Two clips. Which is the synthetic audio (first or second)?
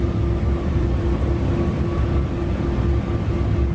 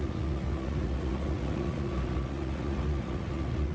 second